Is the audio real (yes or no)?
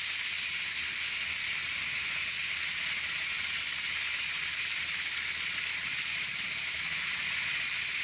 yes